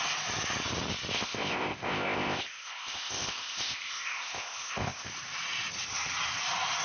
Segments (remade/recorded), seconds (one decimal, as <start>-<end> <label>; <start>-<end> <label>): 0.0-1.1 recorded; 1.1-5.1 remade; 5.1-6.8 recorded